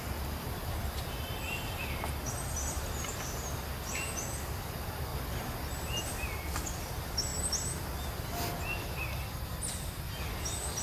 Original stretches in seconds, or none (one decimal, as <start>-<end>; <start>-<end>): 0.0-10.8